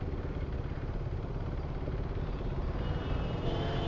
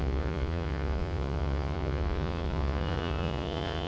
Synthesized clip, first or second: second